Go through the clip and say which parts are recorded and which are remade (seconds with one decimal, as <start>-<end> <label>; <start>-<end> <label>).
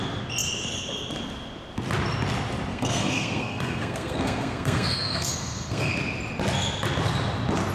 0.0-2.7 recorded; 2.7-5.9 remade; 5.9-7.7 recorded